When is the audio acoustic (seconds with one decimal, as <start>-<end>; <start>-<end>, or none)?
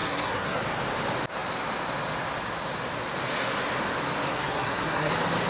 0.6-4.3; 5.1-5.5